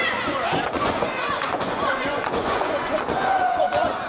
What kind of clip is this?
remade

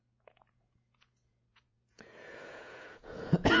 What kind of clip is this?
remade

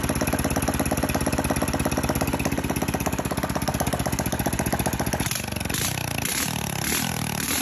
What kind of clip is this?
recorded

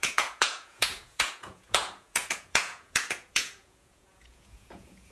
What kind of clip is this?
remade